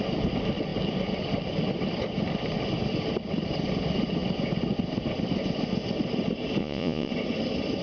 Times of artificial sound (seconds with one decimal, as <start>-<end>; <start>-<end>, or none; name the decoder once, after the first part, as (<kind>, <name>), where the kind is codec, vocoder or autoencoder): 6.6-7.1 (vocoder, Vocos)